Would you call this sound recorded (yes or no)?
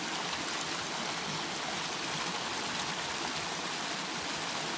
yes